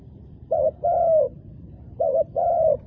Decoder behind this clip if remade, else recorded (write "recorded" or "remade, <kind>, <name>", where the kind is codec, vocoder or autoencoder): remade, vocoder, BigVGAN v2